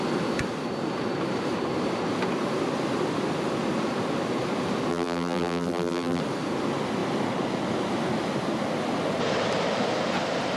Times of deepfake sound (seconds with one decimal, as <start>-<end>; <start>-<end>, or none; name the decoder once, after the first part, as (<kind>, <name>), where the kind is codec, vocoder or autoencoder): 4.9-6.2 (vocoder, BigVGAN v2)